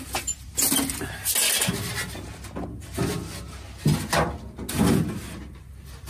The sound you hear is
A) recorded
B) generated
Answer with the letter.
A